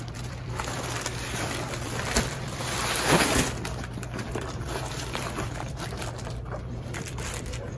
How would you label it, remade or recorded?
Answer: remade